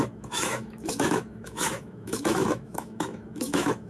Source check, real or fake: fake